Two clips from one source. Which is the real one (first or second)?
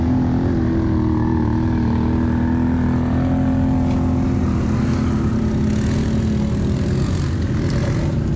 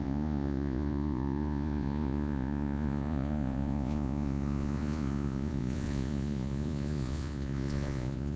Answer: first